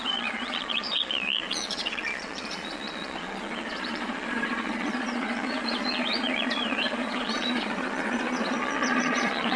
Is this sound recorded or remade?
remade